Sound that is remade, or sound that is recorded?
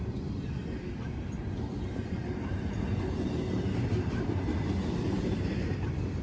recorded